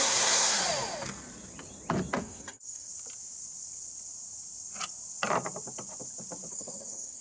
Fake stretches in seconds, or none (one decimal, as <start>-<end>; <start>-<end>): 0.0-0.6; 2.2-2.9; 6.5-7.2